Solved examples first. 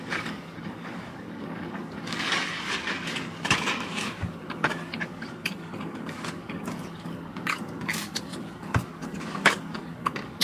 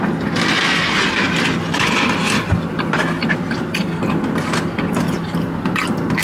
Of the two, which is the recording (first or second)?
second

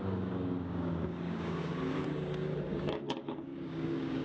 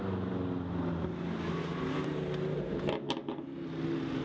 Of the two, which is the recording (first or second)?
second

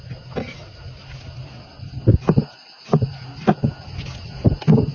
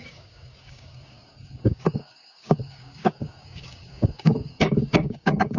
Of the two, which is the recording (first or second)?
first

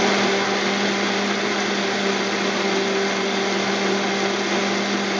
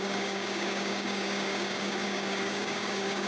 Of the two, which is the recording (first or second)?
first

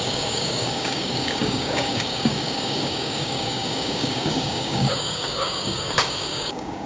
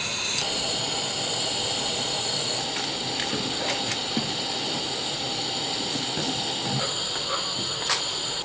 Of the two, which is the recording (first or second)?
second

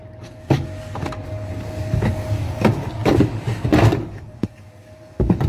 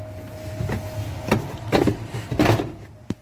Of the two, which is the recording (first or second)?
second